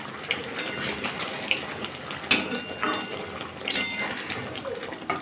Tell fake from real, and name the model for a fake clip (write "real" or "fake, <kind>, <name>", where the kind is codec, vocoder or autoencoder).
real